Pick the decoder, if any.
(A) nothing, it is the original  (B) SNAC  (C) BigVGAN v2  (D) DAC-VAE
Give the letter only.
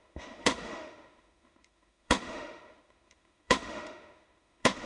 D